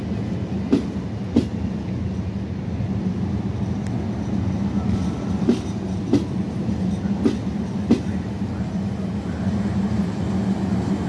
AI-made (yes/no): no